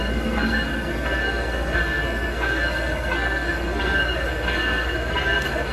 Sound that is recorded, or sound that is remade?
remade